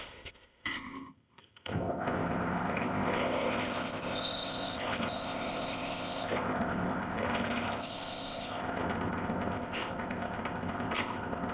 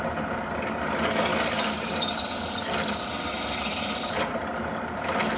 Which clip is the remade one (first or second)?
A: first